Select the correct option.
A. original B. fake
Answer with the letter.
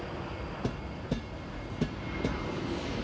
A